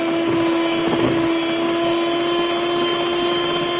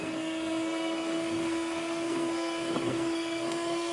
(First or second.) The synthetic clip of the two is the second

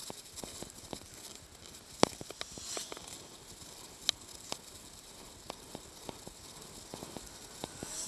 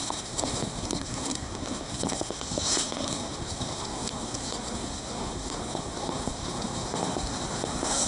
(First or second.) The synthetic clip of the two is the second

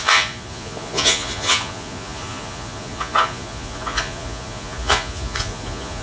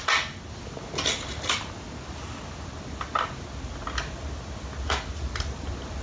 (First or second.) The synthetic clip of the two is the first